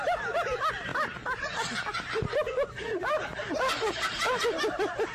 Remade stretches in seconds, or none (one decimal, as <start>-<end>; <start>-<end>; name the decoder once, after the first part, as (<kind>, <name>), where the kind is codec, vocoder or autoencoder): none